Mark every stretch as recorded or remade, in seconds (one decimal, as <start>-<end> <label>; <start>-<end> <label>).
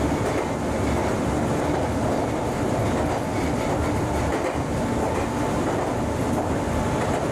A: 0.0-7.3 recorded